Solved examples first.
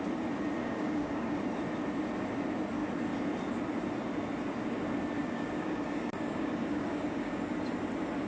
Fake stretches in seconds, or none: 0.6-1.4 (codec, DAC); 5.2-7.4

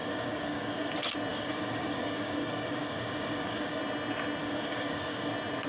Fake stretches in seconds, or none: 0.0-0.9 (codec, DAC); 1.3-3.8; 4.4-5.3

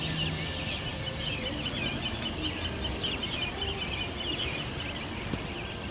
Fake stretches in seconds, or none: none

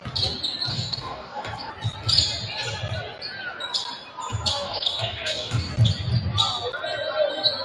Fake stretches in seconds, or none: 0.7-1.7 (codec, DAC); 4.5-5.7

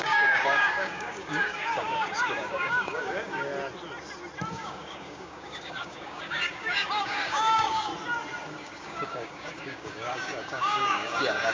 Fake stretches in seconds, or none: 0.0-3.5 (codec, DAC); 4.5-7.9; 8.5-11.5

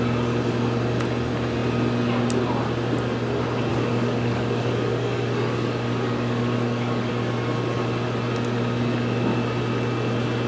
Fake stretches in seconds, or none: 3.7-7.1 (codec, DAC)